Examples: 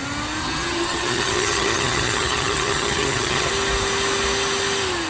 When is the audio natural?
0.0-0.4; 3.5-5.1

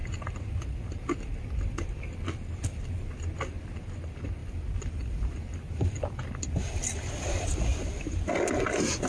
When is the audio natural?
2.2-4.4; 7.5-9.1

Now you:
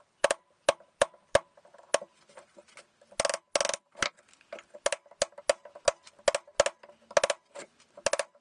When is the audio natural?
0.0-8.4